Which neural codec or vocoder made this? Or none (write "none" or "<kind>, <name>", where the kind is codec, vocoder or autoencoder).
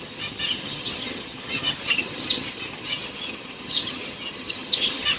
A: vocoder, HiFi-GAN